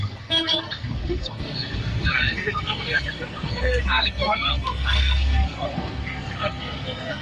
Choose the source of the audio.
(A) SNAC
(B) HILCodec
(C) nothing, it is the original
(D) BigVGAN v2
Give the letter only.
A